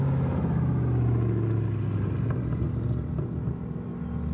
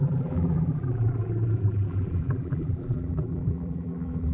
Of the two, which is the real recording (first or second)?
first